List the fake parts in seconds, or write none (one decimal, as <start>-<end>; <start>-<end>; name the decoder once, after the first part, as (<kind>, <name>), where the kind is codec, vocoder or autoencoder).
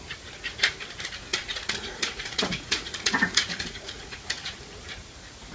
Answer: 1.3-4.6 (vocoder, Vocos)